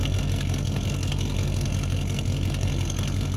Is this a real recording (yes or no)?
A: no